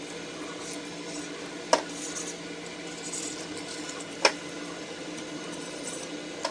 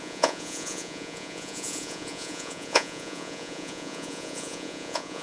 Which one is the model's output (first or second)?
second